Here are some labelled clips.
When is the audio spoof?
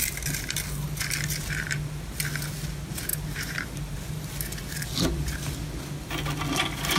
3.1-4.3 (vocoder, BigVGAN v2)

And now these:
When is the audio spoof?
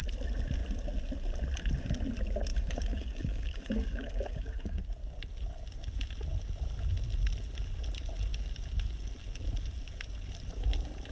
2.5-4.8 (codec, DAC)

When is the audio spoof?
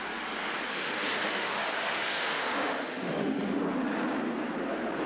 0.7-3.6 (autoencoder, DAC-VAE)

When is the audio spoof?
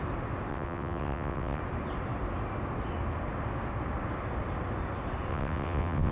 0.5-1.6 (vocoder, WaveNeXt); 5.3-6.1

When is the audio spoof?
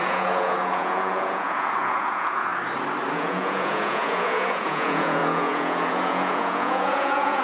0.0-2.5 (vocoder, Vocos); 3.1-7.4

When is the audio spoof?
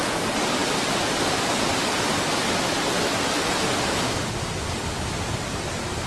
none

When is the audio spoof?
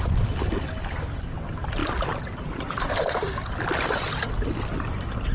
none